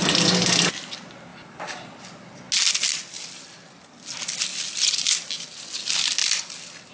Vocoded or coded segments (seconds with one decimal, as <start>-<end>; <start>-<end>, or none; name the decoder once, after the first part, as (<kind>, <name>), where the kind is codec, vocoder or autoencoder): none